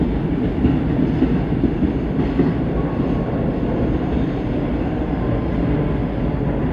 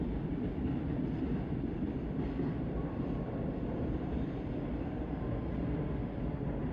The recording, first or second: first